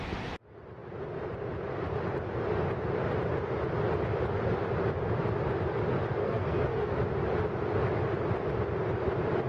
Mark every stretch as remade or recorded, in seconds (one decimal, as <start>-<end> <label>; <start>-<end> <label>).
0.0-6.2 recorded; 6.2-6.9 remade; 6.9-9.5 recorded